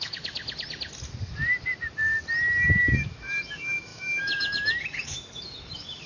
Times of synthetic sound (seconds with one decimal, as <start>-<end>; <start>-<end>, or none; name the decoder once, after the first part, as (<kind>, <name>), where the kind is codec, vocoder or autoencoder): 0.0-0.4 (autoencoder, DAC-VAE); 2.8-6.1